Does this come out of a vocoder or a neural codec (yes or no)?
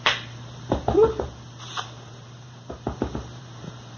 yes